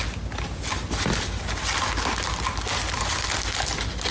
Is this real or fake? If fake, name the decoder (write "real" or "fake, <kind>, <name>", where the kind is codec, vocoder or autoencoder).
real